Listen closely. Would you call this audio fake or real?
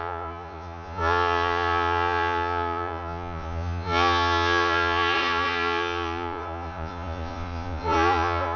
fake